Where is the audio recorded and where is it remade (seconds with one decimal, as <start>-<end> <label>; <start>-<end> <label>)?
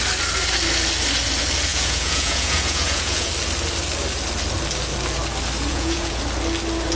0.0-1.7 recorded; 1.7-3.3 remade; 3.3-5.7 recorded; 5.7-6.2 remade; 6.2-6.9 recorded